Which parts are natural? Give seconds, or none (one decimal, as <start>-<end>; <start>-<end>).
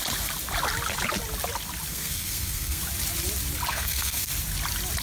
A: 0.0-1.9; 2.8-3.7; 4.3-5.0